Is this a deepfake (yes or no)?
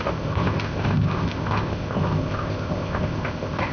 yes